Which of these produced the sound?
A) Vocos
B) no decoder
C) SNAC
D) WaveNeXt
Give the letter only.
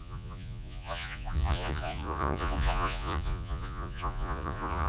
A